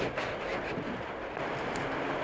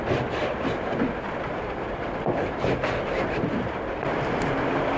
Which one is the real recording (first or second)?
first